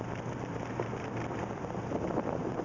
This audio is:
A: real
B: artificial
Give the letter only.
B